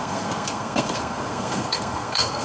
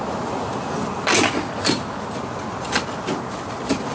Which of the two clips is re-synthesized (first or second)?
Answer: first